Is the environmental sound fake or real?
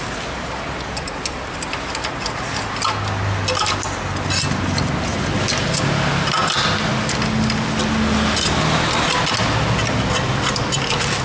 real